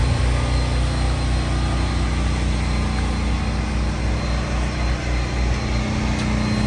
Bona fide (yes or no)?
yes